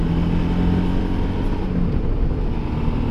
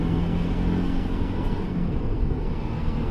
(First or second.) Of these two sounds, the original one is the first